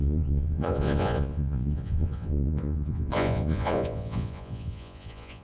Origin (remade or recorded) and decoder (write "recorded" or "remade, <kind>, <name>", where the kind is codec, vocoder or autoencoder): remade, vocoder, Vocos